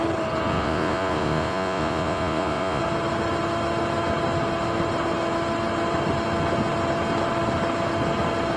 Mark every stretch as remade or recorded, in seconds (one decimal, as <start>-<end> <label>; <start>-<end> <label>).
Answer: 0.0-0.5 recorded; 0.5-2.8 remade; 2.8-8.6 recorded